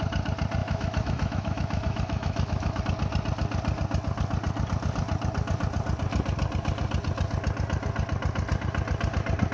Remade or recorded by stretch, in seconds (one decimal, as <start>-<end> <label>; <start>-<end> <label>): 0.0-0.6 recorded; 0.6-2.8 remade; 2.8-9.5 recorded